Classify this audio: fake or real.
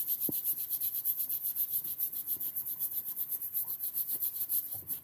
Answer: real